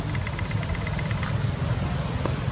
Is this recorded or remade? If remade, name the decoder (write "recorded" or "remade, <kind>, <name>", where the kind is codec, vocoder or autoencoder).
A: recorded